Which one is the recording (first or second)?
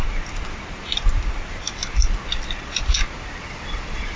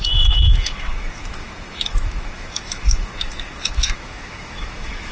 first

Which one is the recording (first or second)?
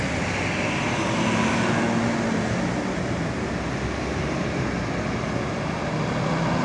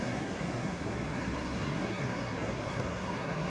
first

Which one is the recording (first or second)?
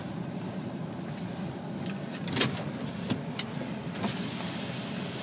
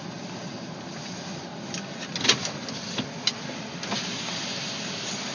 second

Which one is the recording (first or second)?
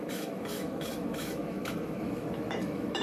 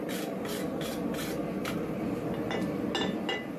second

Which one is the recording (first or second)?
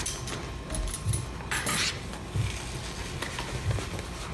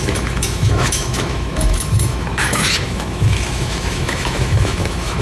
first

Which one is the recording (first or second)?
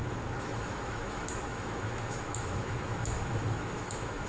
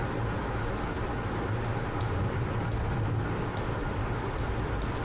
second